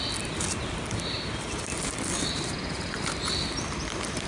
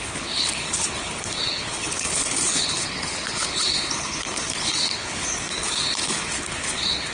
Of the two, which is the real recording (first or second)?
first